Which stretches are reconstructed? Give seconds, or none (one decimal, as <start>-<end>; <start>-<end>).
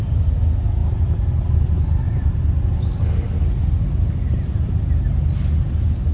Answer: none